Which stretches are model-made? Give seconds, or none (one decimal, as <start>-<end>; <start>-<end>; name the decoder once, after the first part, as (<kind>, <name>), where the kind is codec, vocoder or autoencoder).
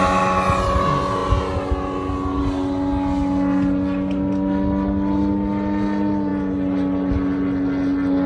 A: none